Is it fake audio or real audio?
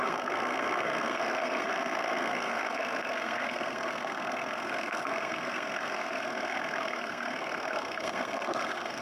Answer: fake